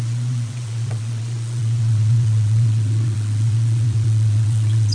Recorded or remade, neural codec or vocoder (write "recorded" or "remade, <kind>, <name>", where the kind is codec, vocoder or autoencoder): remade, vocoder, WaveNeXt